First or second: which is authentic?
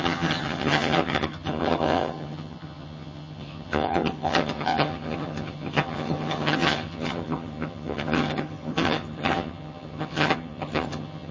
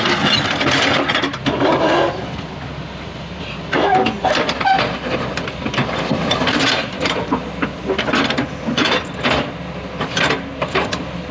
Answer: second